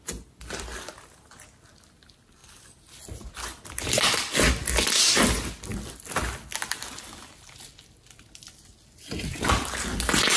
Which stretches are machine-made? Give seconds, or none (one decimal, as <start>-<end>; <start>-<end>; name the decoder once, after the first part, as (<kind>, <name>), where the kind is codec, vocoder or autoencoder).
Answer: none

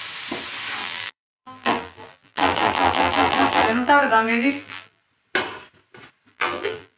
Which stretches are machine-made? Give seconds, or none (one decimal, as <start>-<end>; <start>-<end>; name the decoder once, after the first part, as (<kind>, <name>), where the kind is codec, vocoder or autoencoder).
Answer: 0.8-5.0 (vocoder, BigVGAN v2); 6.3-7.0

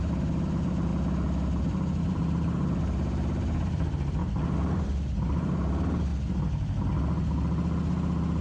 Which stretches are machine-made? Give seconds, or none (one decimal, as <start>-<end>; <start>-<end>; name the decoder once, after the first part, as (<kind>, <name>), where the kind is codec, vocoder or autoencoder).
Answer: 0.0-0.9 (vocoder, BigVGAN v2); 2.0-6.1